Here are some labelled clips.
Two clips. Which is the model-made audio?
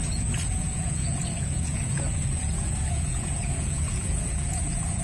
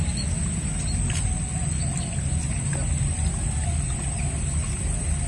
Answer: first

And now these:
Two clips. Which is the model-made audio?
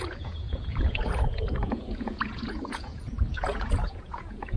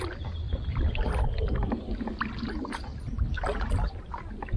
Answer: first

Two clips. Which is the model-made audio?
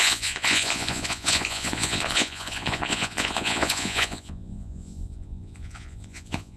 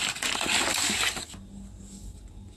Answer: first